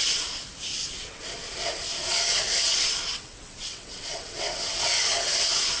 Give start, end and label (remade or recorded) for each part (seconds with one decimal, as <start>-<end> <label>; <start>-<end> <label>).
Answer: 0.0-3.1 recorded; 3.1-5.0 remade; 5.0-5.8 recorded